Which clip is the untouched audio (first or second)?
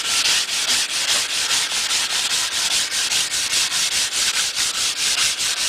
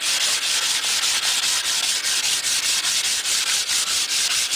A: second